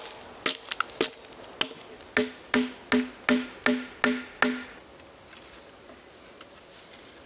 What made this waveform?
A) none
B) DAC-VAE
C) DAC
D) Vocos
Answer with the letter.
A